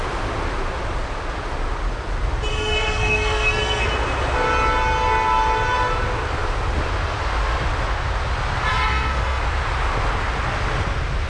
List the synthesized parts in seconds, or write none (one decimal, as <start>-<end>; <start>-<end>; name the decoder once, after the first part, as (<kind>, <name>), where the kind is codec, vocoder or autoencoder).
2.5-3.9 (codec, SNAC); 8.7-9.4